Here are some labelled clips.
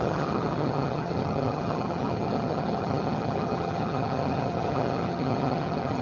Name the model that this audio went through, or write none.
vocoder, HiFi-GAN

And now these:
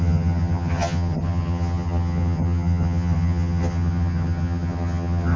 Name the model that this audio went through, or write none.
vocoder, HiFi-GAN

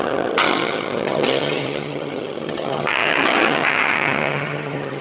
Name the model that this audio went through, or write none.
vocoder, HiFi-GAN